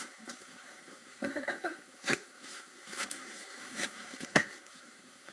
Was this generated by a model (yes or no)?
yes